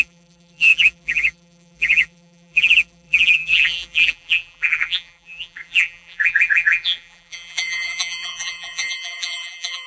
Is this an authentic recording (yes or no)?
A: no